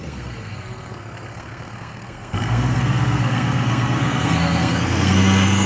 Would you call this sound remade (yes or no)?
yes